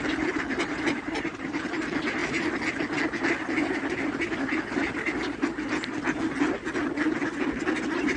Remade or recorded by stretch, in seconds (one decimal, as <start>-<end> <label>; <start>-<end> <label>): 0.0-0.5 recorded; 0.5-1.8 remade; 1.8-8.2 recorded